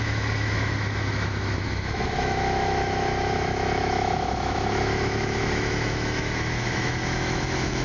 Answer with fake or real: fake